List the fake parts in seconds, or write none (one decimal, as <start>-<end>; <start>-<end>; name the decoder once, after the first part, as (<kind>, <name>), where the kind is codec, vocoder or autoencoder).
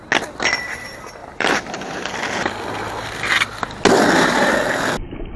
1.2-2.1 (vocoder, BigVGAN v2)